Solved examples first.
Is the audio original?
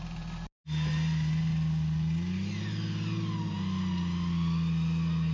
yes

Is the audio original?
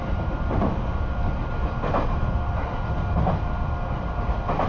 yes